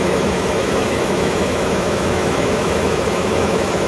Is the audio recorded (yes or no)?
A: no